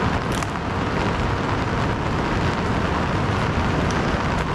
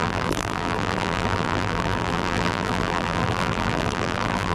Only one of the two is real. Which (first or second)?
first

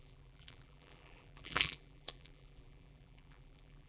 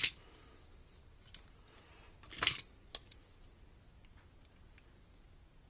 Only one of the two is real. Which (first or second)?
second